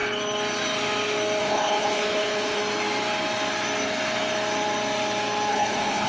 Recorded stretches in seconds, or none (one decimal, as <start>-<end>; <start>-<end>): 0.0-1.4; 2.6-5.5